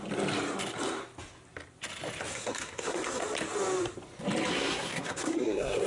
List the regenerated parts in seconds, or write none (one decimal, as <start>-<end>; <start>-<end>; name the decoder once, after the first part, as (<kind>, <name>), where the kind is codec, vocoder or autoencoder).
2.3-3.2 (codec, SNAC); 4.5-5.9